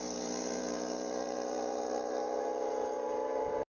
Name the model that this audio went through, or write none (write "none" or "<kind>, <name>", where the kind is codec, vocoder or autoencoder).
vocoder, BigVGAN v2